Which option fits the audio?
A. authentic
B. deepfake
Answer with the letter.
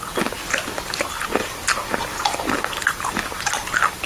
A